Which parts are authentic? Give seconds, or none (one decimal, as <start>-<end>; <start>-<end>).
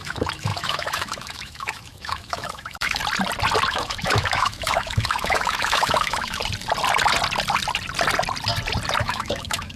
3.0-3.7; 6.4-9.0